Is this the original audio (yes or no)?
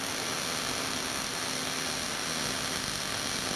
yes